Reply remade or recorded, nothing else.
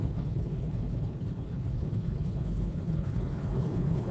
remade